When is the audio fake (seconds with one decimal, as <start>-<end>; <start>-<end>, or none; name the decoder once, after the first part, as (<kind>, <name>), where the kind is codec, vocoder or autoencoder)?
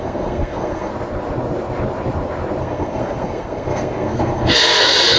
0.0-0.9 (codec, SNAC); 2.6-5.2